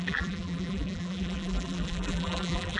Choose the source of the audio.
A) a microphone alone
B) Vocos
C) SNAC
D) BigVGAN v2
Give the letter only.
D